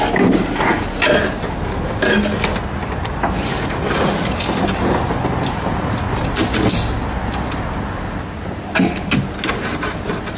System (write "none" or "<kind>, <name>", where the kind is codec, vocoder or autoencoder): none